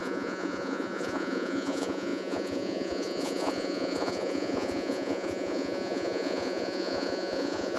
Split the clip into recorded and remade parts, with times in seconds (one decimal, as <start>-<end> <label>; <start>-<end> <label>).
0.0-7.8 remade